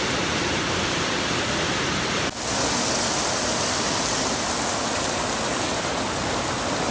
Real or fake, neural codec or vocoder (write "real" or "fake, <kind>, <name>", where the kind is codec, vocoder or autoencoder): real